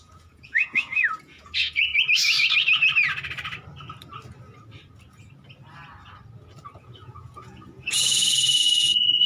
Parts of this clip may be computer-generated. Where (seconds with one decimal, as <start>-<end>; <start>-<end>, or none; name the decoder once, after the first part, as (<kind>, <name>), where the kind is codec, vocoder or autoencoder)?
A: 0.0-1.9 (vocoder, Vocos); 6.8-9.3